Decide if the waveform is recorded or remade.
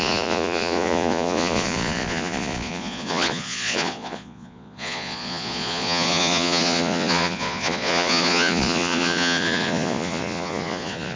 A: remade